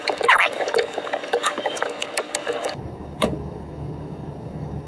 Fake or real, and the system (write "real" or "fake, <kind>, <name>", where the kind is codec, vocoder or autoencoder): fake, codec, DAC